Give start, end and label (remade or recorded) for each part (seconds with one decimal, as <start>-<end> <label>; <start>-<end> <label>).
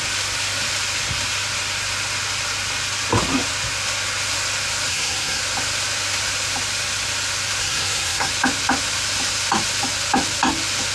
0.0-4.9 recorded; 4.9-5.4 remade; 5.4-7.6 recorded; 7.6-8.3 remade; 8.3-10.9 recorded